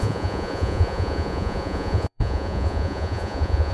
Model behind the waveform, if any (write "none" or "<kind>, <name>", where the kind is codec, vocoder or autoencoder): vocoder, Vocos